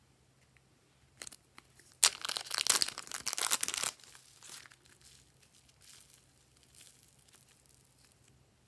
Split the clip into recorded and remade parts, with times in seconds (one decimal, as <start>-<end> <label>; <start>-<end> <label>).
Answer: 0.0-8.7 recorded